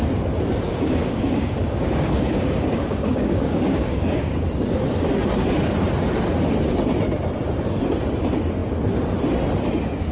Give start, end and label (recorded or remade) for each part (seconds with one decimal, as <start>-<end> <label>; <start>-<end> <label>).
0.0-0.7 recorded; 0.7-4.5 remade; 4.5-10.1 recorded